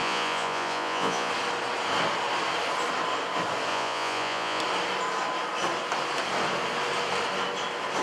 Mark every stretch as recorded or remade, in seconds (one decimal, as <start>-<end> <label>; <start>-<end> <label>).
0.0-1.3 remade; 1.3-3.7 recorded; 3.7-4.6 remade; 4.6-8.0 recorded